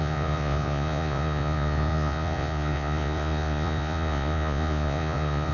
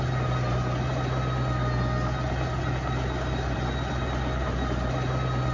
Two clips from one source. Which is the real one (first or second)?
second